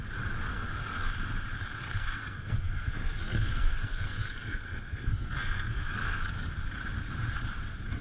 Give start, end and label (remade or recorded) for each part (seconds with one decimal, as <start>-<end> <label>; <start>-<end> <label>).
0.0-0.5 recorded; 0.5-1.1 remade; 1.1-1.7 recorded; 1.7-6.5 remade; 6.5-8.0 recorded